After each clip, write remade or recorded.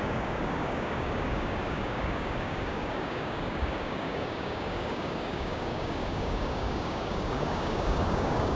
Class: remade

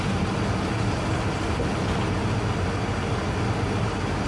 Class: recorded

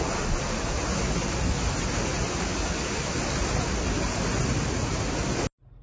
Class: recorded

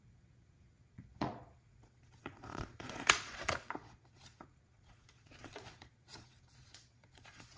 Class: remade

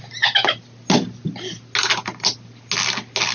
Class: recorded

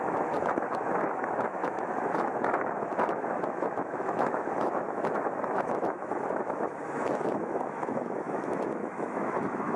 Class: remade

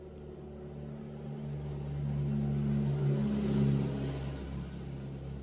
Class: recorded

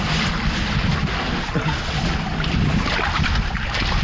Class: recorded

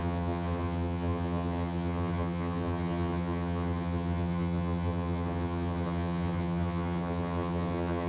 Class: remade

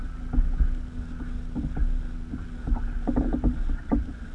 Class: recorded